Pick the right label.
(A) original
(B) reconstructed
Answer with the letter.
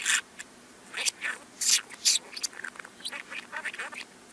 A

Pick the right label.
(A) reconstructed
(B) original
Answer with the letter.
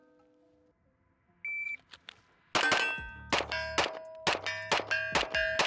B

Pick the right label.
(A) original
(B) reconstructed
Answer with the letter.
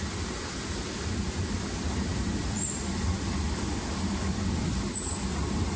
A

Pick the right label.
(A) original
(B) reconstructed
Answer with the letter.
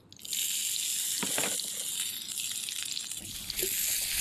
A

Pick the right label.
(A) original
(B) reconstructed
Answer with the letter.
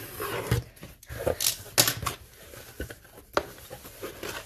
A